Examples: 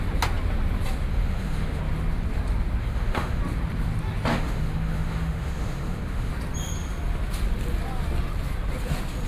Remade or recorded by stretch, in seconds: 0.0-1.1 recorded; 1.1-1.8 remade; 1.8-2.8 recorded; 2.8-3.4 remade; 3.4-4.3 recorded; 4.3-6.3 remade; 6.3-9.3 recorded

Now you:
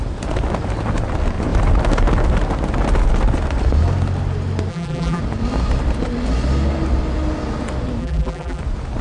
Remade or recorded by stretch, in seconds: 0.0-4.7 recorded; 4.7-5.2 remade; 5.2-8.0 recorded; 8.0-8.6 remade; 8.6-9.0 recorded

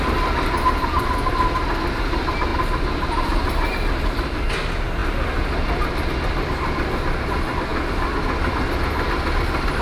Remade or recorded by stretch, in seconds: 0.0-9.8 recorded